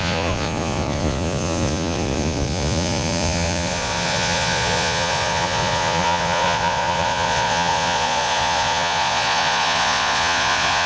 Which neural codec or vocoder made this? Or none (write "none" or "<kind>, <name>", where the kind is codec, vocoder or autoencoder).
vocoder, Vocos